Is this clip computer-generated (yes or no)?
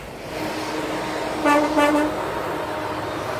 no